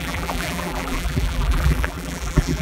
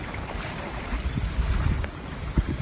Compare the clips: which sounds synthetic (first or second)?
first